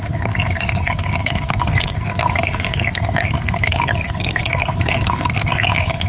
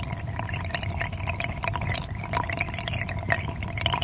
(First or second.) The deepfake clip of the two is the first